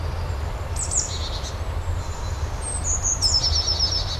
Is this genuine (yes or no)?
yes